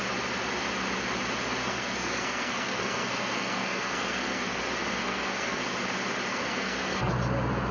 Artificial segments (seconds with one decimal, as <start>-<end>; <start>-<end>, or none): 1.6-4.6; 5.0-5.6; 6.3-7.1